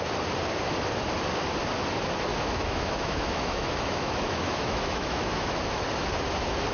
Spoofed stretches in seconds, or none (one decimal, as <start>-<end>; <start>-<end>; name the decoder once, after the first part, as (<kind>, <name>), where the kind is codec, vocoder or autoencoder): 2.3-5.7 (autoencoder, DAC-VAE)